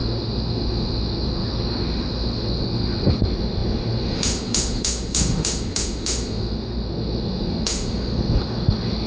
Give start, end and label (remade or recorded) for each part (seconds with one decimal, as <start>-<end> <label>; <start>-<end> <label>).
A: 0.0-9.1 remade